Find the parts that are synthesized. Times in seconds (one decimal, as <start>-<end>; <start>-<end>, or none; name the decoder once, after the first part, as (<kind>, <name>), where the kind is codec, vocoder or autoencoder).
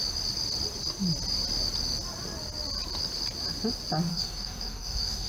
4.1-5.3 (codec, DAC)